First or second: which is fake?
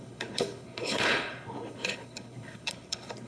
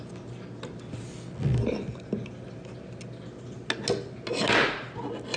first